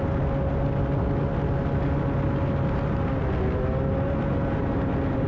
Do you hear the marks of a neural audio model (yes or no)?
no